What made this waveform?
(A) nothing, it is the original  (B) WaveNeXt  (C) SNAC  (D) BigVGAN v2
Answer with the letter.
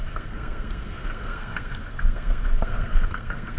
C